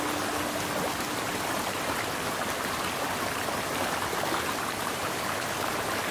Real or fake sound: real